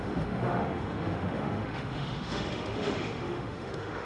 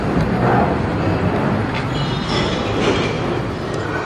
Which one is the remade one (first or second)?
first